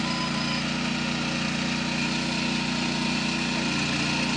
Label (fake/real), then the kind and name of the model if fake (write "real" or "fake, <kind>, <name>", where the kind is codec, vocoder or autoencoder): real